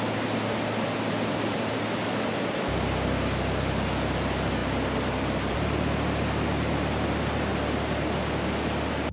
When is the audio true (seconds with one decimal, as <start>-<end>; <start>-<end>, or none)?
0.0-9.1